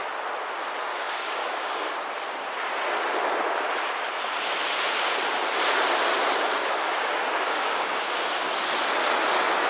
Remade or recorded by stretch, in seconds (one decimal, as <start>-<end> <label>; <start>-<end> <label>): 0.0-0.9 recorded; 0.9-1.9 remade; 1.9-6.6 recorded; 6.6-8.0 remade; 8.0-9.7 recorded